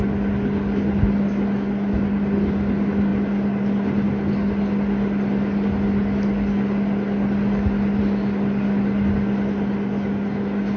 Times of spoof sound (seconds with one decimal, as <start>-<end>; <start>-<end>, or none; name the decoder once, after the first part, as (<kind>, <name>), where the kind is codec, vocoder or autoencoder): none